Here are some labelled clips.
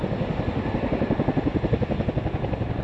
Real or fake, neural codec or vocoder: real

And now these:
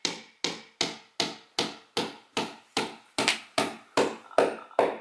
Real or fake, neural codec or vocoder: real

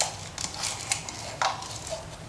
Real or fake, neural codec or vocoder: real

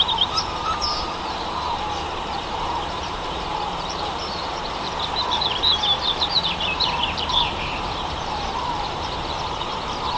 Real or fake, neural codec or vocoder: fake, vocoder, BigVGAN v2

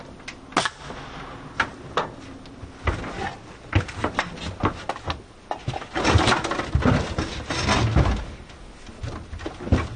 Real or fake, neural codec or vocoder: real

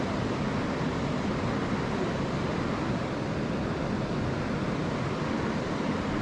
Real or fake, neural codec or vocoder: real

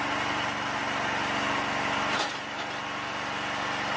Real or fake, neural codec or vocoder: real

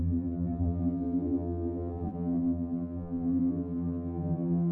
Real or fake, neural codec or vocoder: fake, vocoder, BigVGAN v2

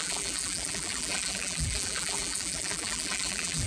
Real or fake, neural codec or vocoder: fake, vocoder, BigVGAN v2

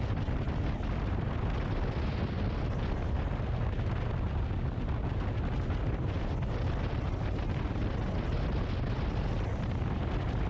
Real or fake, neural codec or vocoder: real